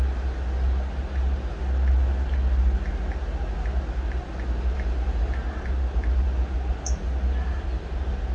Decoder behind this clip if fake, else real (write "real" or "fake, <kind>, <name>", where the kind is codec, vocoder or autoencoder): real